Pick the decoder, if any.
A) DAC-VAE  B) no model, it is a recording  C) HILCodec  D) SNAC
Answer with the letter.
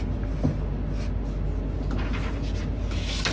B